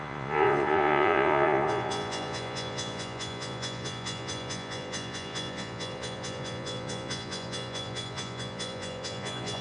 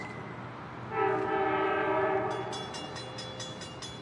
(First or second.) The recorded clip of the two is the second